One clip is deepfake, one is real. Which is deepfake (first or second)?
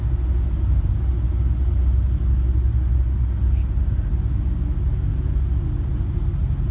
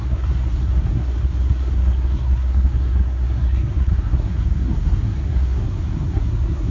second